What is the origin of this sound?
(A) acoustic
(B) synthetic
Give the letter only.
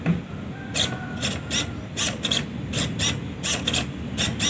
A